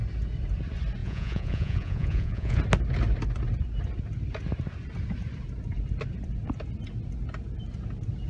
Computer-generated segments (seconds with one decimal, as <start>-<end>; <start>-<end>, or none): 1.0-2.6